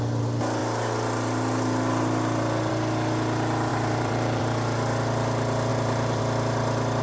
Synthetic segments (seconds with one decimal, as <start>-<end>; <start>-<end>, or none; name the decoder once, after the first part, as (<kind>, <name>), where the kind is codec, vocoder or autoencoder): 3.7-4.4 (vocoder, BigVGAN v2); 5.7-6.2